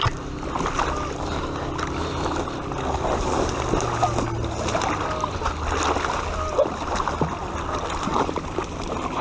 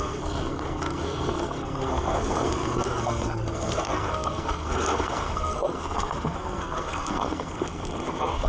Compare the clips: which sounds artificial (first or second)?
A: second